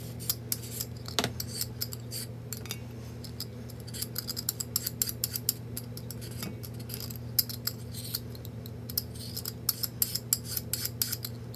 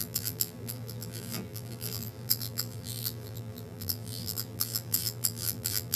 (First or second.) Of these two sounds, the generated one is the second